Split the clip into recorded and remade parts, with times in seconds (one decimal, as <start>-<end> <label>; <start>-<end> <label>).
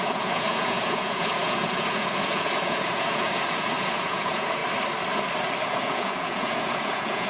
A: 0.0-4.6 remade; 4.6-5.6 recorded; 5.6-7.3 remade